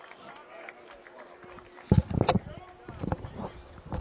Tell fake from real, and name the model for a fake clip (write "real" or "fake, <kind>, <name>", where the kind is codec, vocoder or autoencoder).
real